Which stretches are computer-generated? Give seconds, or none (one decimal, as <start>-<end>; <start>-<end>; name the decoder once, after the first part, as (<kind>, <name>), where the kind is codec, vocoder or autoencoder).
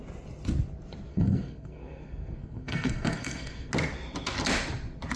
1.1-3.7 (codec, SNAC)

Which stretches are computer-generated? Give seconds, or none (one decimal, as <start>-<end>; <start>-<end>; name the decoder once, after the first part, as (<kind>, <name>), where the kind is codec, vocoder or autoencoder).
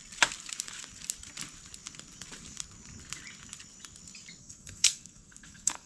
4.4-5.9 (codec, SNAC)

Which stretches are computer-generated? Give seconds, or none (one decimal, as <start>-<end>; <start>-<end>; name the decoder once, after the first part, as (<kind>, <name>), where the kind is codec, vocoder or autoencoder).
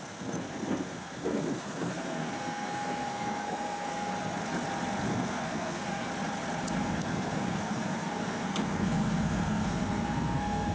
0.0-4.1 (codec, SNAC); 5.1-6.1; 6.7-10.7